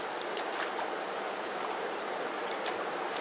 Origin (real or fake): fake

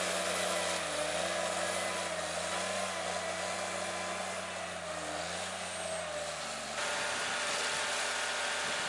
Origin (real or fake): real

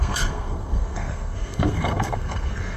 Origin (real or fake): fake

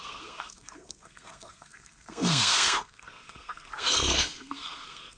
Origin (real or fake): fake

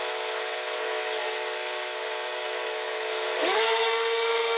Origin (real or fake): fake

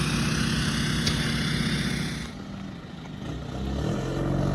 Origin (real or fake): real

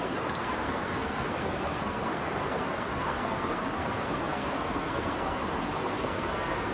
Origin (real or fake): fake